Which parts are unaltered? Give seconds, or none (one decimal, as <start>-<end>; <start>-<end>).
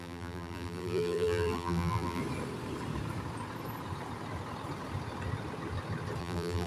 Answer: 2.2-6.2